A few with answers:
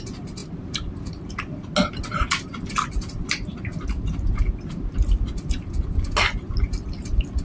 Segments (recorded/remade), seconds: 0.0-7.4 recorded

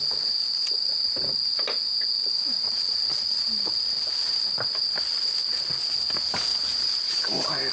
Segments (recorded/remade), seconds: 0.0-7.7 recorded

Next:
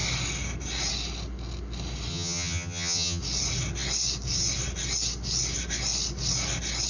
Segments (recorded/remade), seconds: 0.0-2.1 recorded; 2.1-3.2 remade; 3.2-6.9 recorded

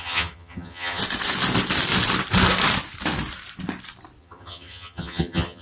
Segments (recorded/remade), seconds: 0.0-1.0 remade; 1.0-4.2 recorded; 4.2-5.6 remade